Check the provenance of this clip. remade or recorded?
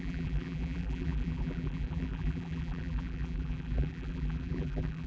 remade